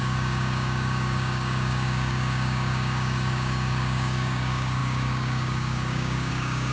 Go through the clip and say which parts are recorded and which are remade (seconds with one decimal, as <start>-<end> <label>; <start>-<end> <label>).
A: 0.0-6.7 remade